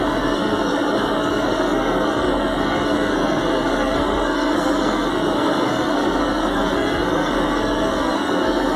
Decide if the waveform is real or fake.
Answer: fake